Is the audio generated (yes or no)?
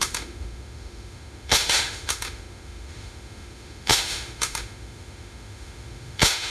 yes